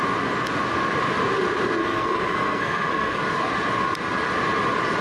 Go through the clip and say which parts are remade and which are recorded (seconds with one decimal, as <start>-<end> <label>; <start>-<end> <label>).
0.0-1.8 recorded; 1.8-3.2 remade; 3.2-5.0 recorded